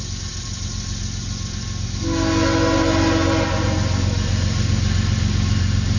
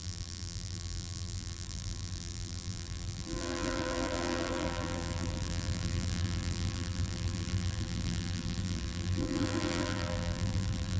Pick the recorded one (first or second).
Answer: first